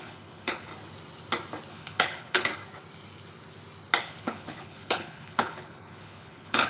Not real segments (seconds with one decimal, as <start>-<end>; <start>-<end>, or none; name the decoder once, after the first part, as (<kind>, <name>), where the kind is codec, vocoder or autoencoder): 0.0-0.7 (codec, HILCodec); 1.7-2.5; 4.0-6.7